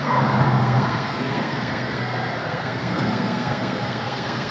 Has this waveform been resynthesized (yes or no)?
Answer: yes